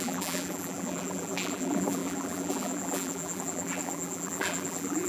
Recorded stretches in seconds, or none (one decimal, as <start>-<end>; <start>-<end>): none